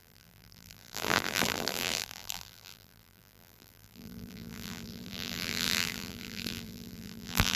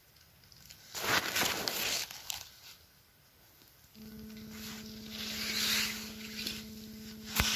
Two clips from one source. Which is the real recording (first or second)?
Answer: second